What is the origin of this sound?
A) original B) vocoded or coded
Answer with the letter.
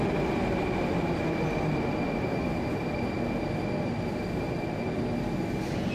A